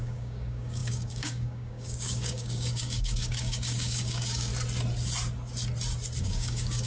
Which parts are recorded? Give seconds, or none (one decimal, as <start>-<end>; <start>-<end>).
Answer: 4.5-6.2